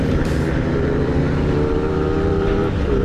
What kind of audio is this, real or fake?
fake